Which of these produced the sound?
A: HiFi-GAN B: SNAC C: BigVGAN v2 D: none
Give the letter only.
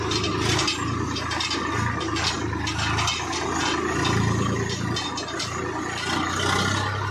D